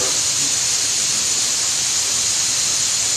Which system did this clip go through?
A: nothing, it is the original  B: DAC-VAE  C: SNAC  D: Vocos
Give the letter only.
A